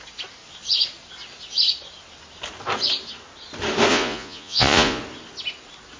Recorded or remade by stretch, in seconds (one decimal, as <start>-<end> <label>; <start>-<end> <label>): 0.0-3.9 recorded; 3.9-5.0 remade; 5.0-6.0 recorded